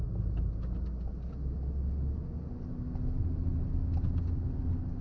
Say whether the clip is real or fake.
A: real